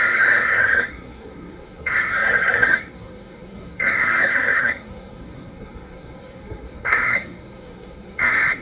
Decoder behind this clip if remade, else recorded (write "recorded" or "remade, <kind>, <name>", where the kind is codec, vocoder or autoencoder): remade, codec, SNAC